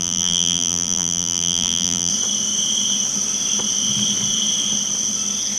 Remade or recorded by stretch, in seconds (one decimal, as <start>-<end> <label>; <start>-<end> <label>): 0.0-2.1 remade; 2.1-5.6 recorded